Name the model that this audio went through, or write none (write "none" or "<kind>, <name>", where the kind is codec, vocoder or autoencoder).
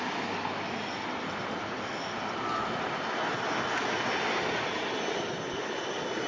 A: none